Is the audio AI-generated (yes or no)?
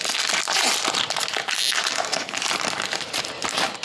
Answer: no